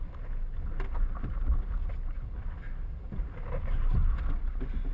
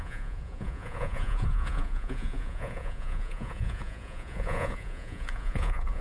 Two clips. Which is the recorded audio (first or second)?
first